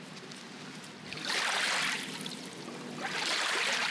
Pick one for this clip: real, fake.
real